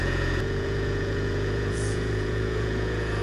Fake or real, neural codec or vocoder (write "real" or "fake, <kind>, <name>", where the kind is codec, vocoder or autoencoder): fake, vocoder, Vocos